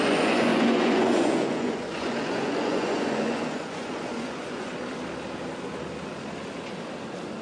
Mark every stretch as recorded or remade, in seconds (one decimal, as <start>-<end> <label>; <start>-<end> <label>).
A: 0.0-4.7 remade; 4.7-7.4 recorded